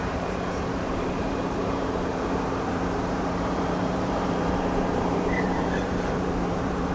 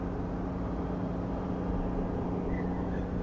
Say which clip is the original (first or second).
second